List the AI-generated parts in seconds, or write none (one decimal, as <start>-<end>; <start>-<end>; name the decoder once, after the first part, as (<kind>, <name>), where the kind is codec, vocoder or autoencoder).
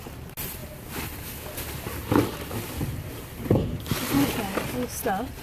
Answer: none